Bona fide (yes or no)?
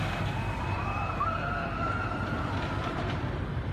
no